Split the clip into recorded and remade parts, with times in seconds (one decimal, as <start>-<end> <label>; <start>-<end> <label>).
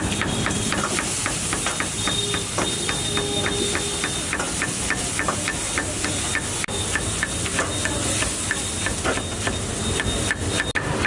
0.0-11.1 recorded